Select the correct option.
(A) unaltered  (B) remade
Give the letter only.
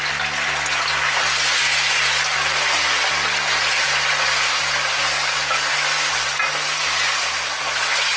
A